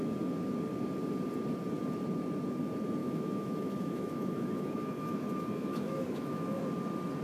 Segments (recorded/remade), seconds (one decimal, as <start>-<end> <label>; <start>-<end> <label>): 0.0-3.0 recorded; 3.0-6.6 remade; 6.6-7.2 recorded